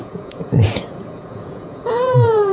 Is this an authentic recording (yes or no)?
no